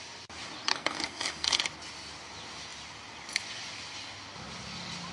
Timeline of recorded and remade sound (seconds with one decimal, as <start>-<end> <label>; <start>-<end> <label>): 0.0-0.7 recorded; 0.7-1.6 remade; 1.6-5.1 recorded